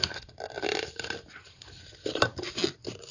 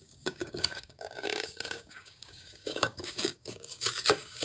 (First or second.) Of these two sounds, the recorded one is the first